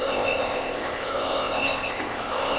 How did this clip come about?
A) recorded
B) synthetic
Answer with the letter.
B